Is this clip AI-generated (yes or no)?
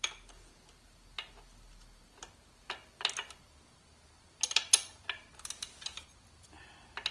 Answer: no